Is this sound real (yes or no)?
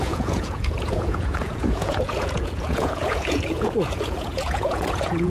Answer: no